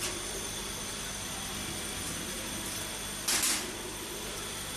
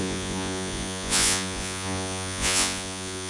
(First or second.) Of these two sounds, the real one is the first